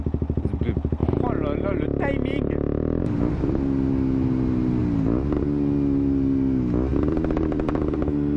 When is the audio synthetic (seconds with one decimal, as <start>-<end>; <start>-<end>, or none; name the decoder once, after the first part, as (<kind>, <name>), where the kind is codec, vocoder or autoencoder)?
1.0-3.0 (vocoder, BigVGAN v2); 6.9-8.0